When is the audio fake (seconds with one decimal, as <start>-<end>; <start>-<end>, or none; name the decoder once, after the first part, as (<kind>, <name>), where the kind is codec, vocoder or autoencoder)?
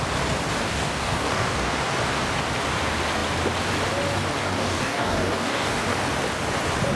0.6-1.7 (codec, DAC); 4.4-5.8